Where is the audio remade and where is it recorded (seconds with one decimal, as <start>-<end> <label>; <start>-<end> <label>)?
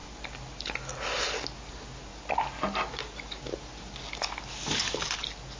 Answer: 0.0-5.6 recorded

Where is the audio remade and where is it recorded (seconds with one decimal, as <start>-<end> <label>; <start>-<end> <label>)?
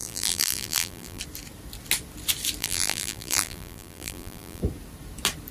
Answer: 0.0-1.2 remade; 1.2-2.6 recorded; 2.6-4.6 remade; 4.6-5.5 recorded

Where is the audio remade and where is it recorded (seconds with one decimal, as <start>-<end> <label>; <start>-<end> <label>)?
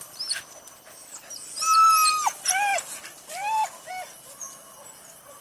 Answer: 0.0-2.7 recorded; 2.7-3.9 remade; 3.9-5.4 recorded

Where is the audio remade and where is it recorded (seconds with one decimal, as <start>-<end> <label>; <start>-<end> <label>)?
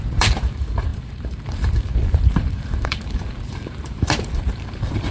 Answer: 0.0-5.1 remade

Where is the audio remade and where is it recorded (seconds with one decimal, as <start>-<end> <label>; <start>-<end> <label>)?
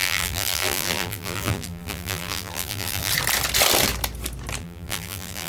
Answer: 0.0-3.1 remade; 3.1-4.6 recorded; 4.6-5.5 remade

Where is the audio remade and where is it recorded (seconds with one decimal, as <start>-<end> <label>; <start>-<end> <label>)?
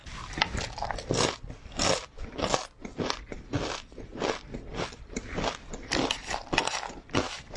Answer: 0.0-0.8 recorded; 0.8-7.6 remade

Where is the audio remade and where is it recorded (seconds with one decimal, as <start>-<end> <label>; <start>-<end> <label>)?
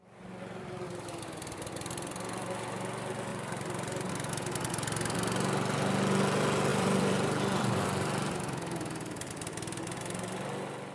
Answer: 0.0-3.3 recorded; 3.3-4.1 remade; 4.1-6.7 recorded; 6.7-9.3 remade; 9.3-10.9 recorded